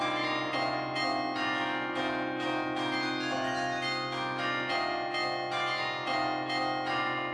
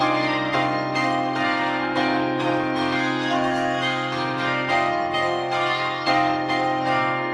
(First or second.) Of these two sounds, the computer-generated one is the second